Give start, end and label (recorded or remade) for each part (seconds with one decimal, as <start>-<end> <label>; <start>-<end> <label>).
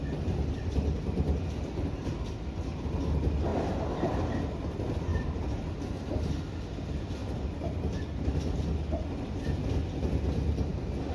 0.0-3.5 recorded; 3.5-4.3 remade; 4.3-5.1 recorded; 5.1-5.6 remade; 5.6-11.1 recorded